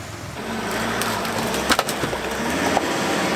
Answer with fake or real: real